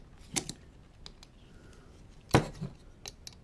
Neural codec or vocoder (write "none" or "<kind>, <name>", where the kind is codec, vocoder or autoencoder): none